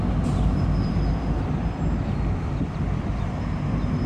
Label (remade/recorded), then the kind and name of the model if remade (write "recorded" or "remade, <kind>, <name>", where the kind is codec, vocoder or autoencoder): recorded